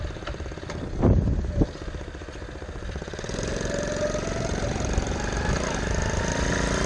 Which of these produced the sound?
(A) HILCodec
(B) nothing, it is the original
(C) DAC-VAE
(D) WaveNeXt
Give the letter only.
B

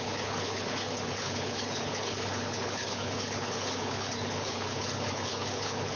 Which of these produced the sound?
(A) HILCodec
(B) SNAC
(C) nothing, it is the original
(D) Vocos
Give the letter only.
A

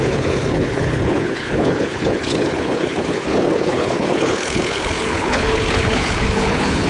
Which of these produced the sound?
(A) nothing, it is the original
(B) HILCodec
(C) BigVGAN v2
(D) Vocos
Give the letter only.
B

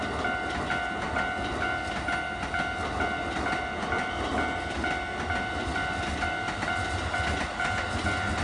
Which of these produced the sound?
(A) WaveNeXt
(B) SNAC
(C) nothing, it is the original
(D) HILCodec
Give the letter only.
C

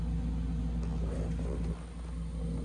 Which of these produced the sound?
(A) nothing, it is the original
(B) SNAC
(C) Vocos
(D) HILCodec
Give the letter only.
A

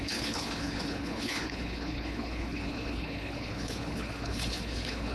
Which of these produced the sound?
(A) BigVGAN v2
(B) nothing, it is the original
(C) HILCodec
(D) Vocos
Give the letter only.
C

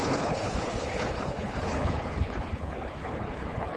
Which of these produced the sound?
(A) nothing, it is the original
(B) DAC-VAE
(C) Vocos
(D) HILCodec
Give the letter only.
D